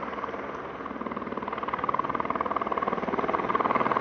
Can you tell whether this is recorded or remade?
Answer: recorded